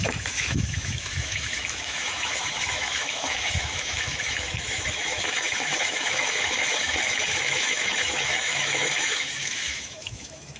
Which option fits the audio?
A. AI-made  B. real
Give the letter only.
A